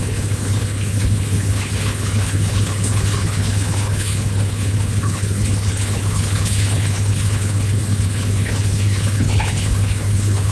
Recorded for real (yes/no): no